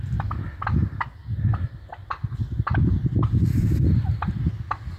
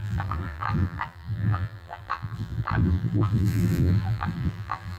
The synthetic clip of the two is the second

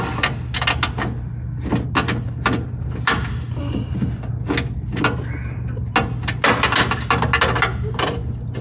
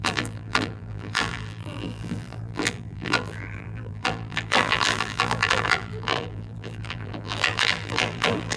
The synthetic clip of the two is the second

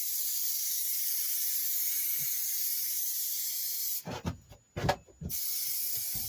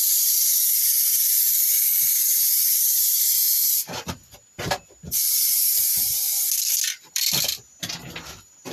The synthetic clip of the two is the second